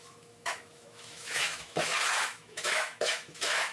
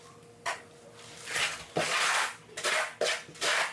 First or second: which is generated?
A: first